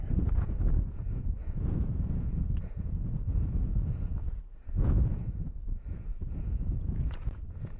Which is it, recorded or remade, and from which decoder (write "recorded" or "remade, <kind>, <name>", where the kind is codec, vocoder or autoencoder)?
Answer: remade, vocoder, Vocos